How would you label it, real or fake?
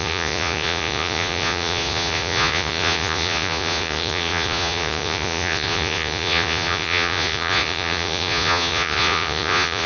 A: fake